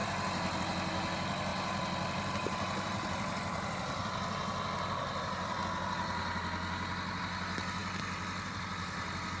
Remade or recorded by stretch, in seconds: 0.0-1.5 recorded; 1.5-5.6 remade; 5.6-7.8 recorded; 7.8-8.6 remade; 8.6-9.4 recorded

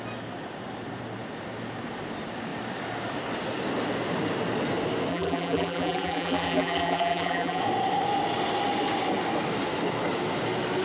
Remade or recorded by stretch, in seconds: 0.0-5.1 recorded; 5.1-7.6 remade; 7.6-10.8 recorded